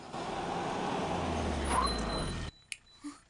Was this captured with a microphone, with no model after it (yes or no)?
yes